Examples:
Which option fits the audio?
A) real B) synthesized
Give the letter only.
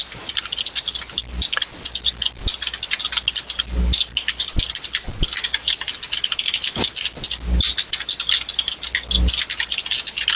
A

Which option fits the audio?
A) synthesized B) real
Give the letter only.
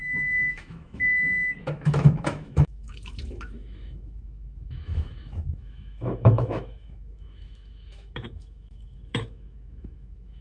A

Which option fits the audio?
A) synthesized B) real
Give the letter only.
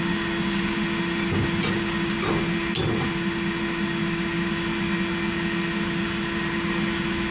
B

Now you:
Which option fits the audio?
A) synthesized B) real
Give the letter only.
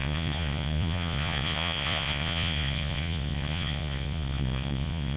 A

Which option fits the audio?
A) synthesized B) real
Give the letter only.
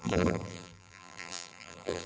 A